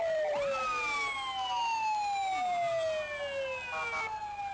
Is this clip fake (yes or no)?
no